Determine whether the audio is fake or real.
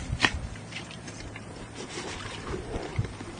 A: fake